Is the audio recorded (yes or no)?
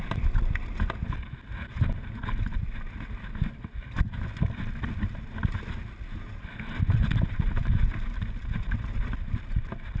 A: yes